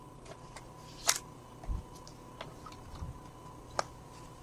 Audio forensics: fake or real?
real